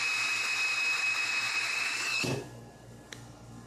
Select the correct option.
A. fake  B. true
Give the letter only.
B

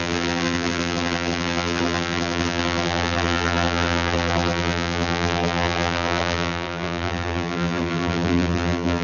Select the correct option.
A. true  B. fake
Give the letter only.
B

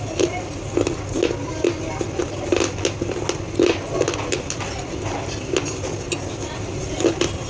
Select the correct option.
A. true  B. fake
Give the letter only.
A